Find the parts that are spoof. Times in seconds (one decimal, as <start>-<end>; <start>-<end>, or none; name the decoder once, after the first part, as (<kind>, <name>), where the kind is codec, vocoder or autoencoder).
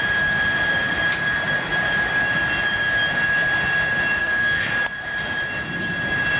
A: 4.2-4.7 (codec, SNAC)